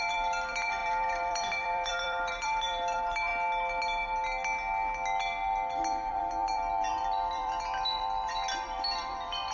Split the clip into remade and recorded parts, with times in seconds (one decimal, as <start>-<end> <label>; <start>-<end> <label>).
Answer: 0.0-3.3 remade; 3.3-6.1 recorded; 6.1-9.5 remade